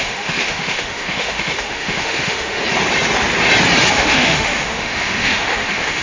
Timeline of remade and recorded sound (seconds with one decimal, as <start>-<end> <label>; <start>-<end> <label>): 0.0-2.6 remade; 2.6-3.9 recorded; 3.9-6.0 remade